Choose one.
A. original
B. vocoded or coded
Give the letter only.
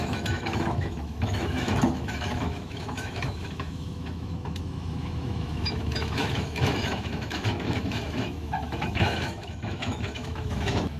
B